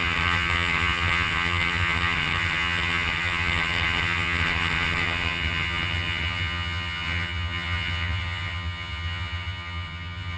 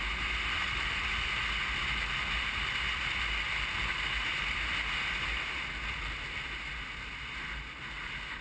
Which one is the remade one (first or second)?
first